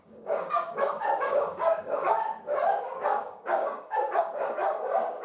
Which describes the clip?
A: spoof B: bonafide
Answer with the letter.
A